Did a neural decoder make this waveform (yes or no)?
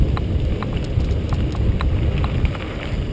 no